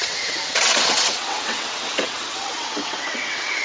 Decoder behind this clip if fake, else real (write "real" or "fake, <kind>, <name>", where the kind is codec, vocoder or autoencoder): fake, vocoder, WaveNeXt